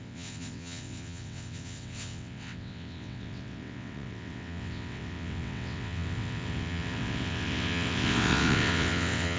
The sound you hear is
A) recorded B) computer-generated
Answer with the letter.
B